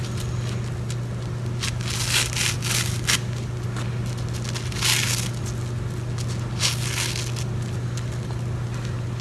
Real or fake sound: real